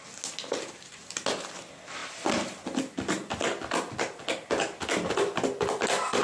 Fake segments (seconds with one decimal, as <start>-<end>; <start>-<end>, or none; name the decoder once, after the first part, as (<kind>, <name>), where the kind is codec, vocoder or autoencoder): none